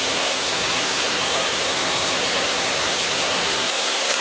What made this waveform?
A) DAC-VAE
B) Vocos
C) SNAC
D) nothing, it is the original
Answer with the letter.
C